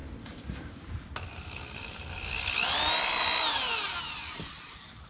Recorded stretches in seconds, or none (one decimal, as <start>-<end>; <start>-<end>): 0.0-5.1